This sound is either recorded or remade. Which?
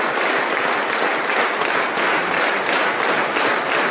recorded